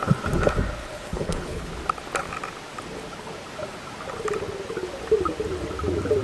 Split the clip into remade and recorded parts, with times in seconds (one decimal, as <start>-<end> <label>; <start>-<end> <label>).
0.0-0.8 recorded; 0.8-1.7 remade; 1.7-6.2 recorded